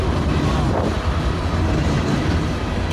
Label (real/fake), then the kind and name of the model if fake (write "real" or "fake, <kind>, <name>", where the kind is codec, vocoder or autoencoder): real